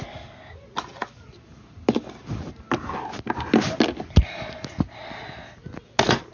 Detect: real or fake real